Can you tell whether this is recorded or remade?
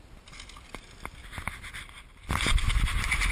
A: recorded